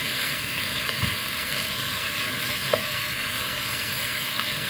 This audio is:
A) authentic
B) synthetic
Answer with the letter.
B